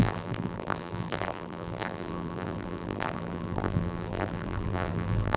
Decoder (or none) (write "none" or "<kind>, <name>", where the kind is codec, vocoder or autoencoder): vocoder, BigVGAN v2